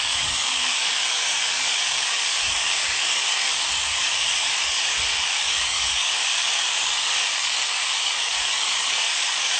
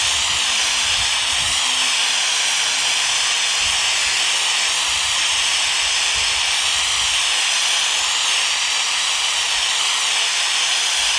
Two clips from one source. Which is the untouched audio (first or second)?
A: second